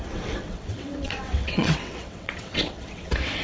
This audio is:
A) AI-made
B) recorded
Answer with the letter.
A